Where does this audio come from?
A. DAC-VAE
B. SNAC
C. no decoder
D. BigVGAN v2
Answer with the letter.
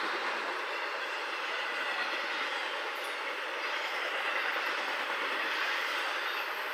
C